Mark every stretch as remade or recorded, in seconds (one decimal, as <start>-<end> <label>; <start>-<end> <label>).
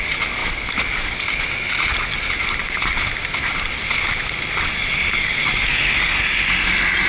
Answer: 0.0-0.4 recorded; 0.4-1.1 remade; 1.1-5.4 recorded; 5.4-6.0 remade; 6.0-7.1 recorded